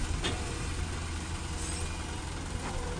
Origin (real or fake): real